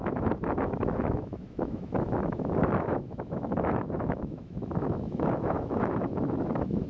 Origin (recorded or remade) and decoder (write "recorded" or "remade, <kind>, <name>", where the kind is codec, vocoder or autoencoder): remade, autoencoder, DAC-VAE